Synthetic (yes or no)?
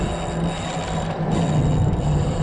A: no